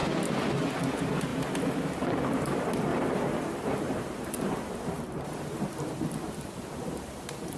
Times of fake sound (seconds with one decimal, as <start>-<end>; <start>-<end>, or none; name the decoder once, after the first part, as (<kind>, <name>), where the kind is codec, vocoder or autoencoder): 1.3-2.2 (vocoder, BigVGAN v2); 2.9-7.6